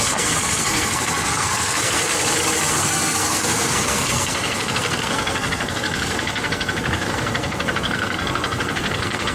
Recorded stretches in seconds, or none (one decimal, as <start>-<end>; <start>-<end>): 2.1-2.7